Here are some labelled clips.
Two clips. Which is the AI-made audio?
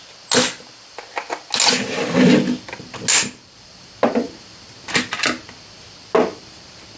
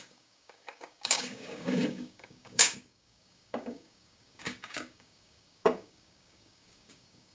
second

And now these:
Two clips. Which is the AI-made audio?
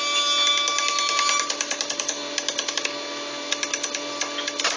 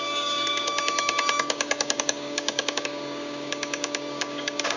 second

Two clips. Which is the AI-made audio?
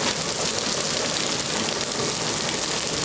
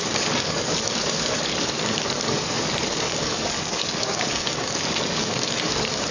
second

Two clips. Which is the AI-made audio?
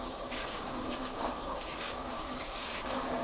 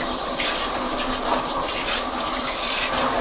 first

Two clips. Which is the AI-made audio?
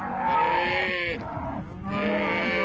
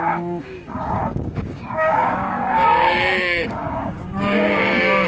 second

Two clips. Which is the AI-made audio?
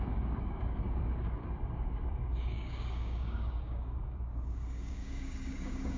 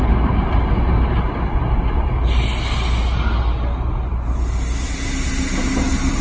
first